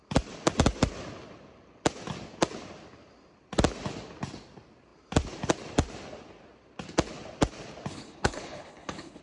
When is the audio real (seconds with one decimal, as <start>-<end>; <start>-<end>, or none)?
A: 0.0-7.9